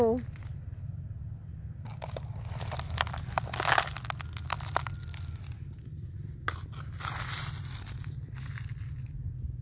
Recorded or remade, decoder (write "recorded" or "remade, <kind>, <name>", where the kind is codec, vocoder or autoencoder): recorded